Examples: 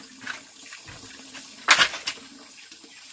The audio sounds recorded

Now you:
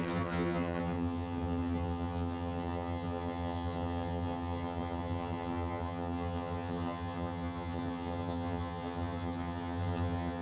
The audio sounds remade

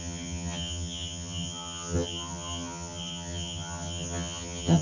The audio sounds remade